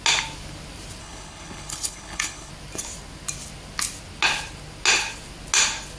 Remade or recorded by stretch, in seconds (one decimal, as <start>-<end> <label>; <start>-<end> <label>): 0.0-1.0 recorded; 1.0-2.5 remade; 2.5-6.0 recorded